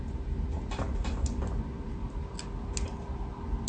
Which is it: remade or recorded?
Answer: recorded